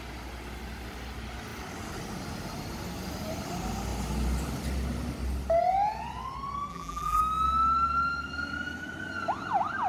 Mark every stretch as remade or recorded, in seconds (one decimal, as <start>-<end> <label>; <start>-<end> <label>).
0.0-6.7 recorded; 6.7-7.2 remade; 7.2-9.9 recorded